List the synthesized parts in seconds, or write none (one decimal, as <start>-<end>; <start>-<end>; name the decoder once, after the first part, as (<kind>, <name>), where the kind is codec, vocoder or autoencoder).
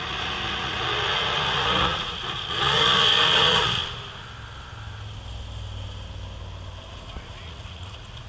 0.0-3.8 (vocoder, Vocos); 6.9-8.3